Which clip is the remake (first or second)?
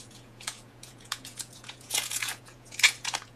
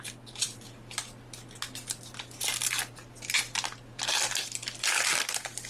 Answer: first